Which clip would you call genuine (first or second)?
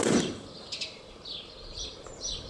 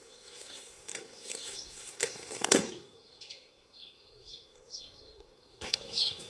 first